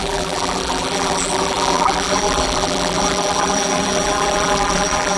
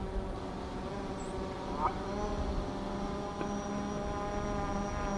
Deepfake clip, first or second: first